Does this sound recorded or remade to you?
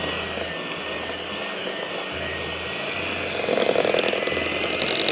recorded